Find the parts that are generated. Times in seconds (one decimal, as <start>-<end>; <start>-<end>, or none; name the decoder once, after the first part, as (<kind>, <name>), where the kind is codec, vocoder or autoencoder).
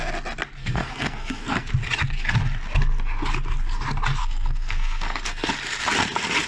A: 0.6-1.7 (codec, SNAC); 4.2-5.5